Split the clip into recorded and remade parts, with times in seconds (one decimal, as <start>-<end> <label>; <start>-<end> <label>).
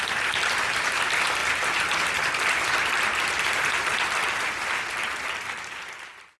0.0-6.4 recorded